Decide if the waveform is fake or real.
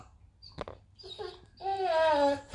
real